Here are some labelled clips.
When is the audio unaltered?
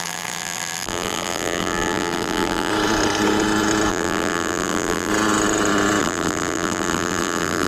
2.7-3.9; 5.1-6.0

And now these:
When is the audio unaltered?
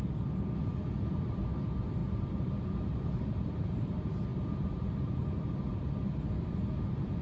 0.0-2.0; 3.7-4.3; 5.7-7.2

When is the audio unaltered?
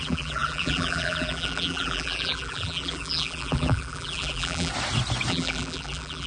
4.7-5.3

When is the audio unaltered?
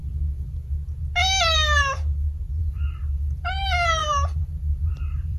0.0-2.6; 3.5-4.0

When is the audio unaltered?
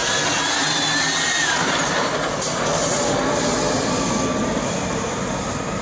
0.0-1.3; 2.1-4.4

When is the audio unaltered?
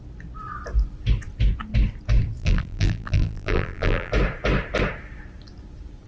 0.0-2.4; 4.1-6.1